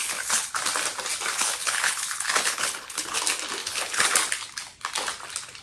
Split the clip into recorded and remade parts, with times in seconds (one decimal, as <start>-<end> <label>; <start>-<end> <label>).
0.0-0.5 remade; 0.5-1.3 recorded; 1.3-3.2 remade; 3.2-3.6 recorded; 3.6-4.1 remade; 4.1-5.6 recorded